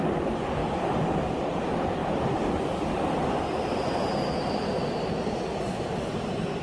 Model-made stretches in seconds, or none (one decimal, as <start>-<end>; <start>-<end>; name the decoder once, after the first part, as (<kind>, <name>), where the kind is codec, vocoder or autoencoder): 0.6-1.2 (vocoder, BigVGAN v2); 2.0-5.6